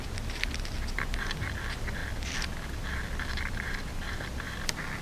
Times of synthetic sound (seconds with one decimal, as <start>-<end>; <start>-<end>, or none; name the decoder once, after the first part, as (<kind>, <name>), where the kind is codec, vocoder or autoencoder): none